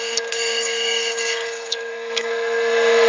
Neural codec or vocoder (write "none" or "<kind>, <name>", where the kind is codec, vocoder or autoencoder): codec, SNAC